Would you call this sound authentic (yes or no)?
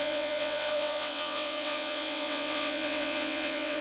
no